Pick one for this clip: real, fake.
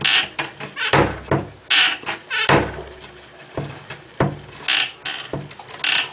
real